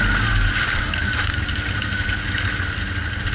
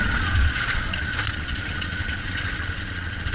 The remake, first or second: second